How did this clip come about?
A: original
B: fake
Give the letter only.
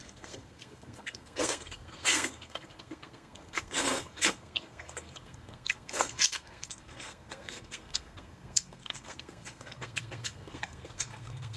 B